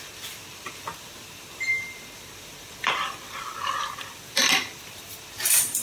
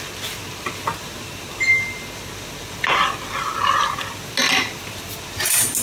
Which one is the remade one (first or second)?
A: first